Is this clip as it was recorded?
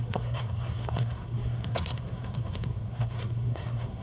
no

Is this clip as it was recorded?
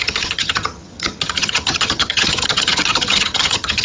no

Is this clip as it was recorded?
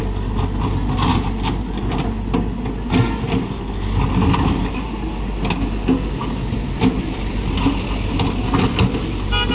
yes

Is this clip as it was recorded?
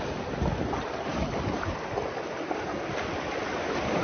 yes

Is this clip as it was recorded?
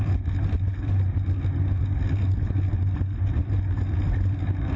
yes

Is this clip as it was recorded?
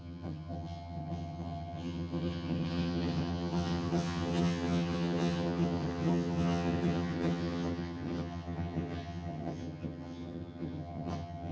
no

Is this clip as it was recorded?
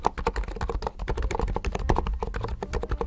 yes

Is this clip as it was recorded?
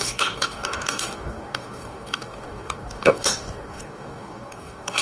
no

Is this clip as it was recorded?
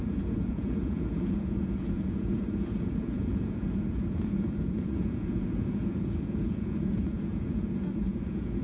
no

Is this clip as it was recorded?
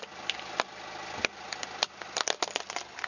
yes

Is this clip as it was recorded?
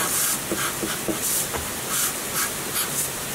yes